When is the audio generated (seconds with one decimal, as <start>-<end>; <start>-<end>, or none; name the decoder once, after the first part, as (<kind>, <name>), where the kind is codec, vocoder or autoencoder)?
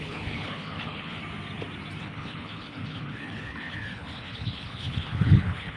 0.0-1.2 (codec, HILCodec); 2.0-5.8